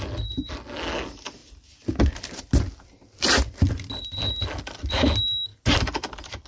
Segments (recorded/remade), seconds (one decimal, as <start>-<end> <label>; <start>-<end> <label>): 0.0-5.5 recorded; 5.5-6.5 remade